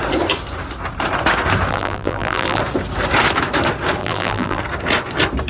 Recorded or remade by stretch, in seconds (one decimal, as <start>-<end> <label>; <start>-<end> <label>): 0.0-1.7 recorded; 1.7-2.6 remade; 2.6-4.0 recorded; 4.0-4.6 remade; 4.6-5.5 recorded